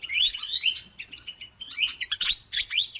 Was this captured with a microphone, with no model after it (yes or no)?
no